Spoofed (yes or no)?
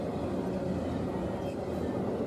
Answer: no